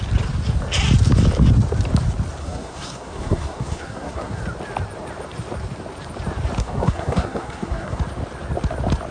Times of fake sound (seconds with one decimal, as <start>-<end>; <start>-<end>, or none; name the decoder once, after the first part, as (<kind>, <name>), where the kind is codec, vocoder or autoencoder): 2.4-4.4 (codec, SNAC); 6.6-8.0